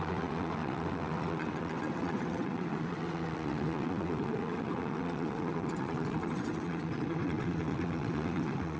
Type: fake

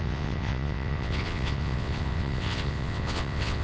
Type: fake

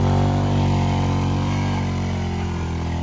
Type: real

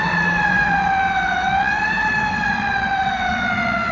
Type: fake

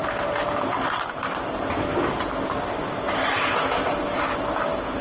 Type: real